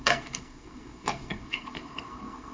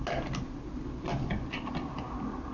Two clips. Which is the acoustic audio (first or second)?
second